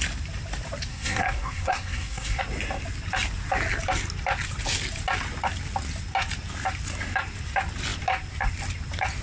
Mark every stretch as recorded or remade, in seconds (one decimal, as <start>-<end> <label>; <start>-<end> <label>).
0.0-0.9 recorded; 0.9-2.4 remade; 2.4-9.2 recorded